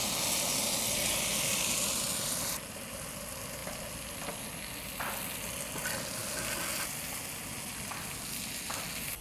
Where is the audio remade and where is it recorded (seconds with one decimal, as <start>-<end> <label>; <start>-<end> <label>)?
0.0-9.2 recorded